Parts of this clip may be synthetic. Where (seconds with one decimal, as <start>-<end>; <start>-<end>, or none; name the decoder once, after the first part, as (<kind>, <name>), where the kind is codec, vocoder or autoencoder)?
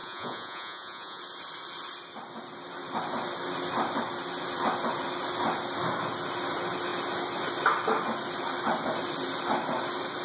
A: 0.0-1.2 (vocoder, Vocos)